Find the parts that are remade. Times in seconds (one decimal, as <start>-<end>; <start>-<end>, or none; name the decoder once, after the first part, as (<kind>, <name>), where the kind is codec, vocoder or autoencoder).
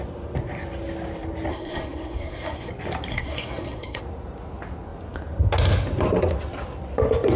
1.5-2.7 (codec, SNAC); 3.1-4.0